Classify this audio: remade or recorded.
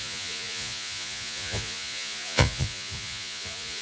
remade